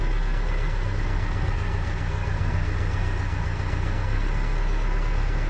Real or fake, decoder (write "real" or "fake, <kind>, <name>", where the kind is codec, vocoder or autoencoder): fake, codec, SNAC